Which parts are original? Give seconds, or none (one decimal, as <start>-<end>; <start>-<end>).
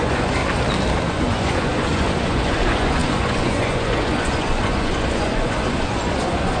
0.4-1.1